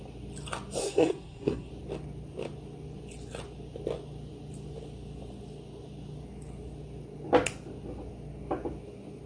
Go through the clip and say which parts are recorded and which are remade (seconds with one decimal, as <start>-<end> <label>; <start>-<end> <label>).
0.0-0.8 recorded; 0.8-1.7 remade; 1.7-9.3 recorded